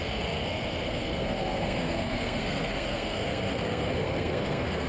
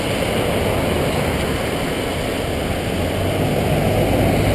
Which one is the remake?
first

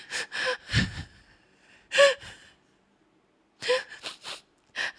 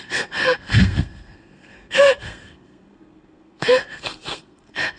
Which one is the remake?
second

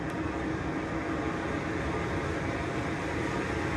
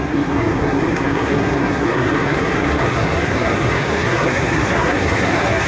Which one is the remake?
second